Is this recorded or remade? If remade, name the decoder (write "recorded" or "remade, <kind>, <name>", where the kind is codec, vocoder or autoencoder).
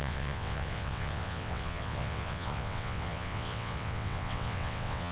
remade, vocoder, WaveNeXt